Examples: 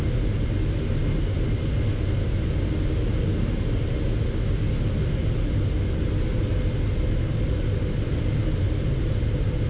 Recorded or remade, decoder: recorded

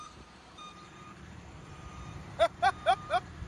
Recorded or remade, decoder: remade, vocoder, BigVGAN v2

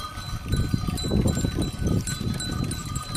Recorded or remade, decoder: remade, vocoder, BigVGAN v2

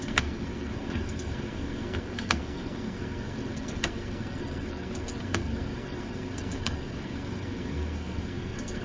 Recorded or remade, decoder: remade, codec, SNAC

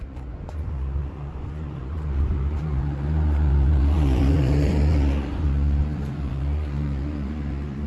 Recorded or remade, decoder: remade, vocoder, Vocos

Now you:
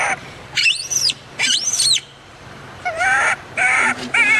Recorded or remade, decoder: remade, vocoder, BigVGAN v2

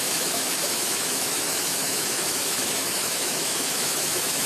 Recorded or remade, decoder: remade, autoencoder, DAC-VAE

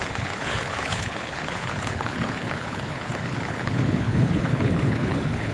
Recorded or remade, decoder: remade, codec, HILCodec